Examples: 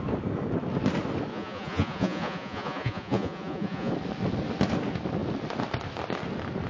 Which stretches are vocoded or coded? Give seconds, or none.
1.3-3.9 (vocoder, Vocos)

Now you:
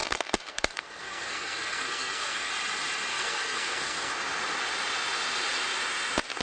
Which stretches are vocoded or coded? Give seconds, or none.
0.0-2.5 (codec, SNAC); 3.1-4.1

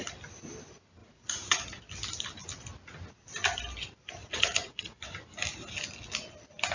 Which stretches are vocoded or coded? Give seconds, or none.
1.0-1.8 (vocoder, Vocos); 4.2-5.0

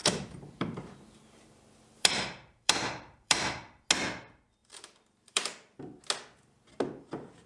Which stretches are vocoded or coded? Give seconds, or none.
0.0-3.9 (vocoder, BigVGAN v2); 4.6-6.0

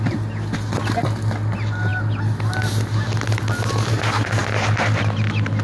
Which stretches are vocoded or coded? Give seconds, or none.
none